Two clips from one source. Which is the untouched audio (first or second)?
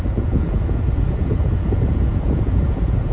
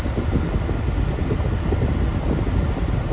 second